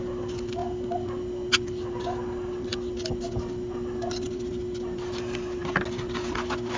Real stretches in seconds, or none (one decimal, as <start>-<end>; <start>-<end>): 0.0-6.8